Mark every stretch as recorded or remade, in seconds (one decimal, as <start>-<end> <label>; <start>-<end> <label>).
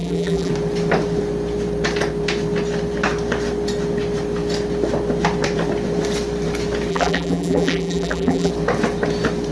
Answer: 0.0-0.5 remade; 0.5-6.9 recorded; 6.9-8.5 remade; 8.5-9.5 recorded